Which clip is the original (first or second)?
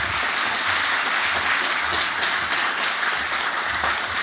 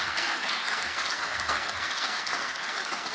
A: first